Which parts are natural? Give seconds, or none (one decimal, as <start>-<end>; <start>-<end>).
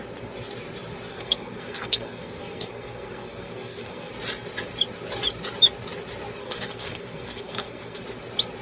0.0-1.1; 4.1-6.4; 8.0-8.6